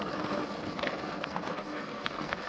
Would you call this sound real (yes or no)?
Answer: no